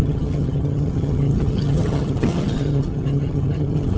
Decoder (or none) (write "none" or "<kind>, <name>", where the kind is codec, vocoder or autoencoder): vocoder, HiFi-GAN